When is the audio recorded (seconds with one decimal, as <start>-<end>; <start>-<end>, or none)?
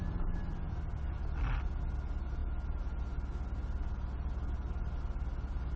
0.0-5.8